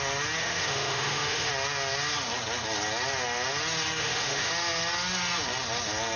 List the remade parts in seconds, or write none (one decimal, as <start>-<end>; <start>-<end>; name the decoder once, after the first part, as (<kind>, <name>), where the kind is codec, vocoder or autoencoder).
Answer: 0.4-1.5 (autoencoder, DAC-VAE); 4.0-4.5